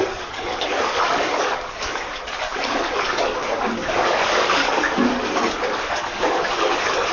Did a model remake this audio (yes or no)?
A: yes